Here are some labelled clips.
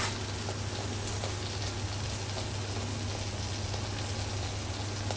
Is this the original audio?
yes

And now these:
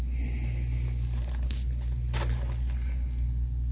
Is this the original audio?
yes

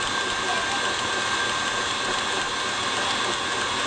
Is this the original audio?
yes